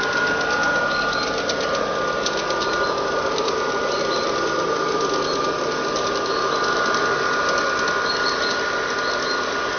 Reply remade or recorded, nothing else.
recorded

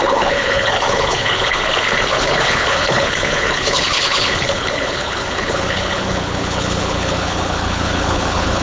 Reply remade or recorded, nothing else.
remade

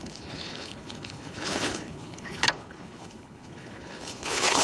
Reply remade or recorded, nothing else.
remade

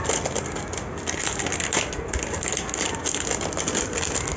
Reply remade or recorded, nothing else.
recorded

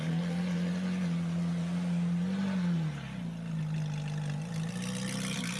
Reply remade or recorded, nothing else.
recorded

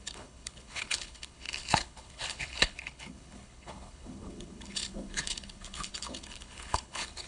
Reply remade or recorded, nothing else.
remade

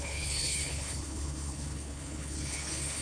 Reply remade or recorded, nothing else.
remade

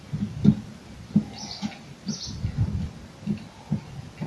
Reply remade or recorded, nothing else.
recorded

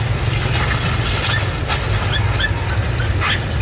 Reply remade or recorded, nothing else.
recorded